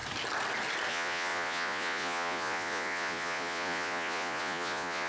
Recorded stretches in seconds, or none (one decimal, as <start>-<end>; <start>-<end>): 0.0-0.9